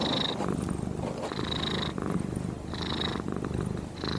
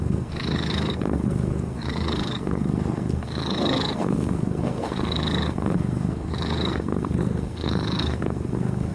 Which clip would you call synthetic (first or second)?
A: second